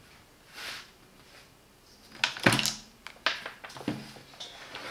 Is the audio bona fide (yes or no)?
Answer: yes